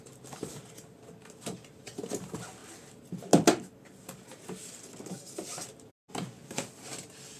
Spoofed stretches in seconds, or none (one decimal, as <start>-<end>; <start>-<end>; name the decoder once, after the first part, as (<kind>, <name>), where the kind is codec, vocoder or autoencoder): none